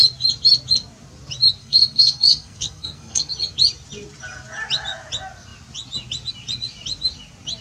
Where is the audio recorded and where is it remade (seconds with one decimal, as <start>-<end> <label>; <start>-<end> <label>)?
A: 0.0-1.6 recorded; 1.6-3.3 remade; 3.3-7.6 recorded